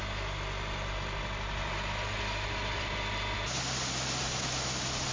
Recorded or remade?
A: recorded